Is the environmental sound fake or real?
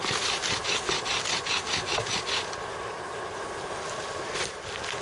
real